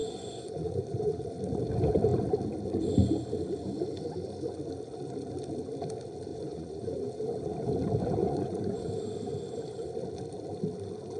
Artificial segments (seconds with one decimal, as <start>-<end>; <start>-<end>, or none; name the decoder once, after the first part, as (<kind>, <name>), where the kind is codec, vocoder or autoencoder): 0.0-1.3 (vocoder, Vocos); 6.3-7.1; 8.2-8.9